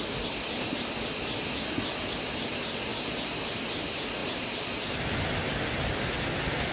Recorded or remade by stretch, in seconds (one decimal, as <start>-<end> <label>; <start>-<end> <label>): 0.0-6.7 recorded